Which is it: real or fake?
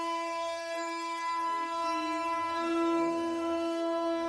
fake